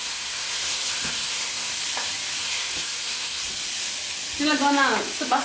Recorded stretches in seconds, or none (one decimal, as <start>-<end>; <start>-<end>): 1.7-2.4; 3.4-5.4

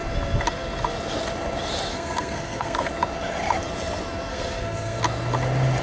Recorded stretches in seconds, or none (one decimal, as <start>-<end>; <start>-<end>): 0.0-1.9; 2.9-4.3; 5.0-5.8

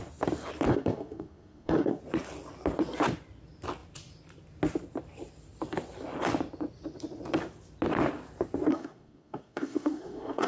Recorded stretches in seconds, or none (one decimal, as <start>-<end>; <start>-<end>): 0.0-0.7; 2.0-8.7

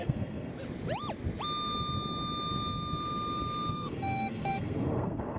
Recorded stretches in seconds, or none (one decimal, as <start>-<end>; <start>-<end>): 0.5-3.7

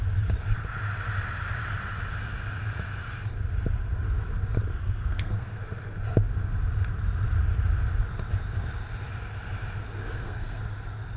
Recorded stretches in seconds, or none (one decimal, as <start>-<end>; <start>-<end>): 0.0-4.8; 5.6-10.0; 10.6-11.2

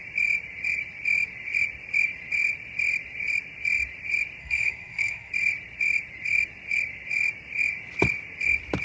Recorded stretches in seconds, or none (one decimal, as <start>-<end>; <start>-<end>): 0.0-4.4; 5.3-8.8

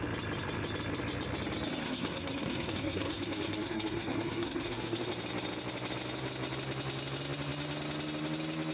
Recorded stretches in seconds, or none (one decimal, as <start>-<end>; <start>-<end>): 0.0-1.8; 5.1-8.7